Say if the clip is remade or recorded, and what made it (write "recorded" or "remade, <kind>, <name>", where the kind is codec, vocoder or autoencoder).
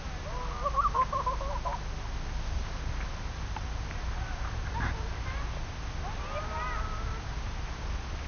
recorded